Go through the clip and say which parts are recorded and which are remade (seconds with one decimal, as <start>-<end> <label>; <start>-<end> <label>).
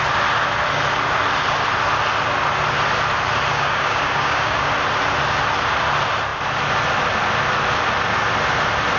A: 0.0-3.5 recorded; 3.5-4.7 remade; 4.7-9.0 recorded